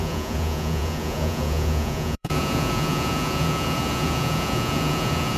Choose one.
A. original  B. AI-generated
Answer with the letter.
B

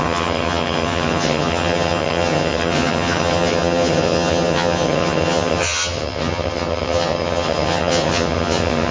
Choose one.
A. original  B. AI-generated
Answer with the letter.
B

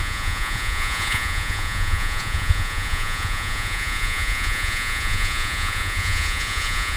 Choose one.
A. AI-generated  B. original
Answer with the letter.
A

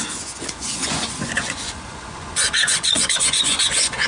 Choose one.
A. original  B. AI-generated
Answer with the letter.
B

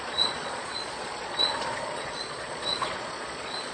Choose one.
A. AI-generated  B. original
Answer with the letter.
A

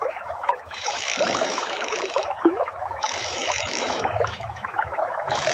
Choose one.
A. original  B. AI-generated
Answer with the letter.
B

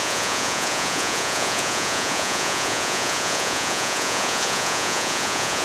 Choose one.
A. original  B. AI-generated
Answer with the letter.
B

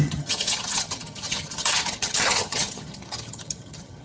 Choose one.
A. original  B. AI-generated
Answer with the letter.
B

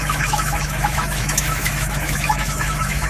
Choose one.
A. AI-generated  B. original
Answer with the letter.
A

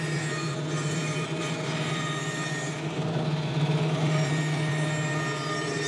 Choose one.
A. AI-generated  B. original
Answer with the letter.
B